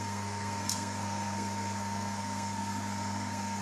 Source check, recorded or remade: remade